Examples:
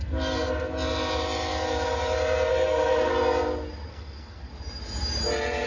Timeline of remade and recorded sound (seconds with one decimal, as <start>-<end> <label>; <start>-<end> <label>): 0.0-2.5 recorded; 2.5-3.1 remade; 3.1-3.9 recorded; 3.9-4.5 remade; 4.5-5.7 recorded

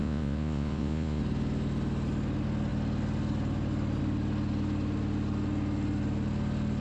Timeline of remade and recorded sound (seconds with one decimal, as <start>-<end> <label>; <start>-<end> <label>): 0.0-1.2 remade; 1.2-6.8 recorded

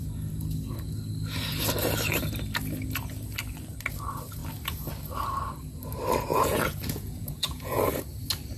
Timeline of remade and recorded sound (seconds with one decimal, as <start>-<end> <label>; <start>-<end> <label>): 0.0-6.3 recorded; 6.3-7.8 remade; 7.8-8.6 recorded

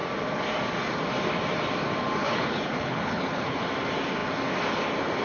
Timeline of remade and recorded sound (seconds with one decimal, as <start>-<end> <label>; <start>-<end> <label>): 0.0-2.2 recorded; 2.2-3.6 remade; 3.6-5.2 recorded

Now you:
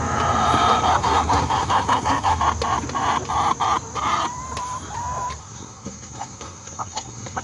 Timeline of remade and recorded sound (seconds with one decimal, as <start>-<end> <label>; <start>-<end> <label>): 0.0-1.0 recorded; 1.0-2.4 remade; 2.4-5.4 recorded; 5.4-7.4 remade

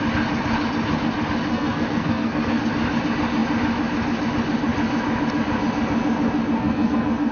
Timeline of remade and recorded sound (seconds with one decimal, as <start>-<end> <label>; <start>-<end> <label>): 0.0-1.5 recorded; 1.5-2.6 remade; 2.6-6.6 recorded; 6.6-7.3 remade